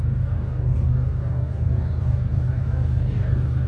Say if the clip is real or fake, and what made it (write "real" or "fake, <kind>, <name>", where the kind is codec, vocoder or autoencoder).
fake, codec, DAC